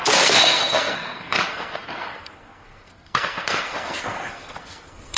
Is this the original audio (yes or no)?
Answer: no